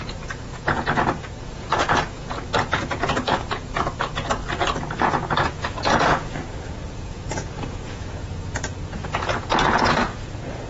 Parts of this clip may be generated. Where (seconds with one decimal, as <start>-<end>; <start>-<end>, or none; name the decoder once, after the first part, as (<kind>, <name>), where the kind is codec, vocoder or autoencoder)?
0.0-4.4 (vocoder, Vocos); 5.0-10.7